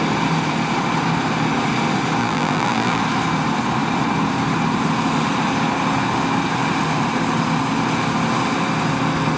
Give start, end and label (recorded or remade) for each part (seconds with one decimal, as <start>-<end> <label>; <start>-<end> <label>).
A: 0.0-2.2 recorded; 2.2-3.0 remade; 3.0-9.4 recorded